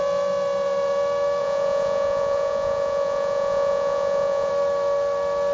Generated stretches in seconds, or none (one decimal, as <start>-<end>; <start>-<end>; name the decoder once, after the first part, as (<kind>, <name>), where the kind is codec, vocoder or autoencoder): 1.4-4.5 (vocoder, Vocos)